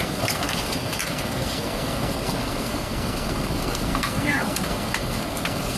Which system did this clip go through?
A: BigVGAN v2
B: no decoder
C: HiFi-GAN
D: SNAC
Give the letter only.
D